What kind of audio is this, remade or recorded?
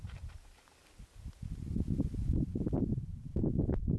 recorded